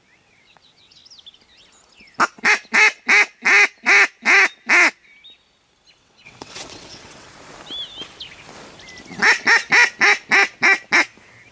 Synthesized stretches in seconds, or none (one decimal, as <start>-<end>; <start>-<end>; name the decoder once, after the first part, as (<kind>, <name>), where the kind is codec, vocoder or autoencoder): 0.0-1.0 (vocoder, WaveNeXt); 6.0-7.3

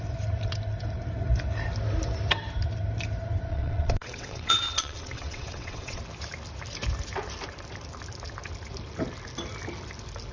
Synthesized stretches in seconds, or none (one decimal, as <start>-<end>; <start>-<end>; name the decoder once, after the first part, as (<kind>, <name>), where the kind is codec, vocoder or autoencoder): 3.5-6.0 (vocoder, WaveNeXt)

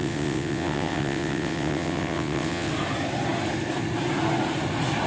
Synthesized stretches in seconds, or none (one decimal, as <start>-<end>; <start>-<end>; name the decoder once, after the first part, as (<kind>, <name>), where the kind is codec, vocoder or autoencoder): 0.0-2.7 (vocoder, WaveNeXt)

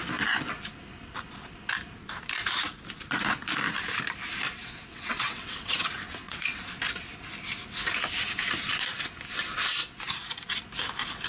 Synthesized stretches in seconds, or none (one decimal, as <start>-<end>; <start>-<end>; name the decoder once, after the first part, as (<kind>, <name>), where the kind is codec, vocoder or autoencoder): 4.6-6.6 (vocoder, WaveNeXt)

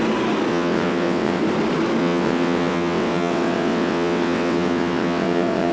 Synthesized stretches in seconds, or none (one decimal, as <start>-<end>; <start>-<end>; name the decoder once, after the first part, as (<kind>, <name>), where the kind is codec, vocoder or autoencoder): 0.5-1.4 (vocoder, WaveNeXt); 2.0-5.7

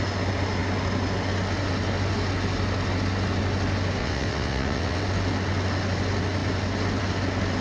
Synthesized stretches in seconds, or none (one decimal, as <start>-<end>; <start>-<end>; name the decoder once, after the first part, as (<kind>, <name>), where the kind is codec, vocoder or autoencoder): 4.0-5.0 (vocoder, WaveNeXt)

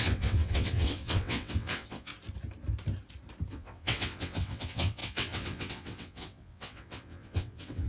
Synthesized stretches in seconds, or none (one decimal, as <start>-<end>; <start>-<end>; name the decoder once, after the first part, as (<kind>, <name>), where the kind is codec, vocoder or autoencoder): 0.0-2.1 (vocoder, WaveNeXt); 3.5-7.9

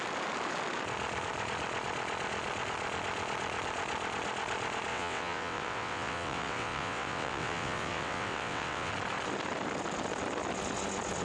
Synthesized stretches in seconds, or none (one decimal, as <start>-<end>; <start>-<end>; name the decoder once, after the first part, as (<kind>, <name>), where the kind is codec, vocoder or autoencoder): 4.9-8.9 (vocoder, WaveNeXt)